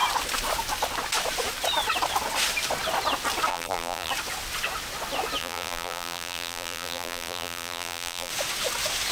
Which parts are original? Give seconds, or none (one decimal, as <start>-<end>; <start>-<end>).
0.0-3.5; 4.1-5.4; 8.3-9.1